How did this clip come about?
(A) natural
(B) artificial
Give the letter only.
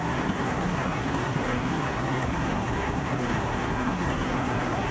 B